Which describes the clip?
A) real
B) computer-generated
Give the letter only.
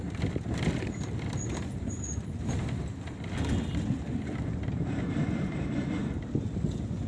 B